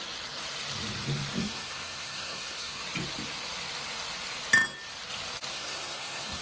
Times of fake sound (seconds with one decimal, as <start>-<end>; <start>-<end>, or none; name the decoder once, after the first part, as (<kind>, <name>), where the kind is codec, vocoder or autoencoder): 1.4-2.8 (codec, SNAC); 5.5-6.4